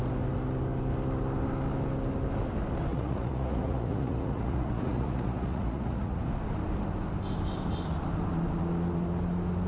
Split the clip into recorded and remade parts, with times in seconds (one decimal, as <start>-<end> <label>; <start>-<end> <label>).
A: 0.0-2.9 recorded; 2.9-6.2 remade; 6.2-9.7 recorded